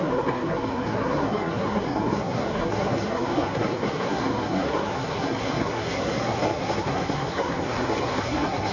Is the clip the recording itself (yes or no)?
no